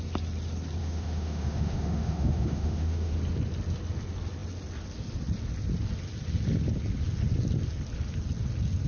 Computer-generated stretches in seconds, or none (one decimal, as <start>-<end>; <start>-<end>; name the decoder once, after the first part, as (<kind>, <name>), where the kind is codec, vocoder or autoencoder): 0.8-3.1 (autoencoder, DAC-VAE)